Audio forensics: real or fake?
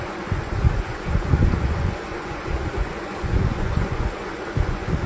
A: fake